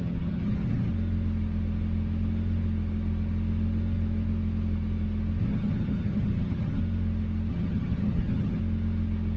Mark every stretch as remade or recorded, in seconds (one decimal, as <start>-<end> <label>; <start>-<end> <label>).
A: 0.0-0.9 remade; 0.9-5.4 recorded; 5.4-6.8 remade; 6.8-7.5 recorded; 7.5-8.6 remade; 8.6-9.4 recorded